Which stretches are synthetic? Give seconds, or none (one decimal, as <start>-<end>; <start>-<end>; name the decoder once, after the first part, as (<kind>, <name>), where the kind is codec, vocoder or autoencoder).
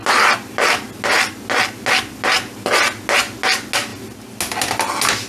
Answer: none